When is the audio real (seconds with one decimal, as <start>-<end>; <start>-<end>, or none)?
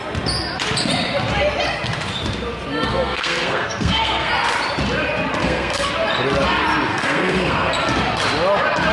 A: 0.0-2.9; 4.3-5.4; 5.9-6.9; 7.7-8.9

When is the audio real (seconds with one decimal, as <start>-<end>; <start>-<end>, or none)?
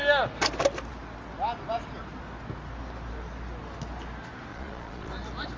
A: 0.0-4.5; 5.1-5.6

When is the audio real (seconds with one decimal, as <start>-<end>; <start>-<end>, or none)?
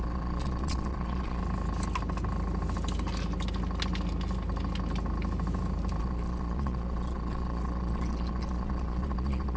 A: 1.4-6.0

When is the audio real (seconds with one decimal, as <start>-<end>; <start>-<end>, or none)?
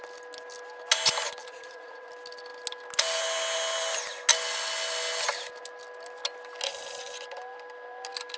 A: 0.0-1.4; 2.1-8.4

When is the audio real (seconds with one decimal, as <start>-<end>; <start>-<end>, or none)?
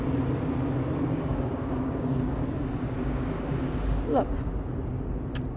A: 0.0-1.1; 4.5-5.6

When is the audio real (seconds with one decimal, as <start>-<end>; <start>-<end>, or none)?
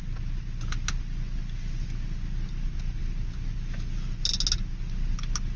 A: 0.0-5.6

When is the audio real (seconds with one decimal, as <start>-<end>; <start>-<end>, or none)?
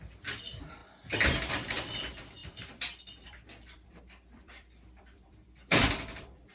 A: 0.8-1.5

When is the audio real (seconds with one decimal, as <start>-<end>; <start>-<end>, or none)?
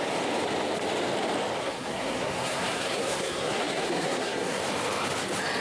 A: 0.0-1.6; 4.6-5.6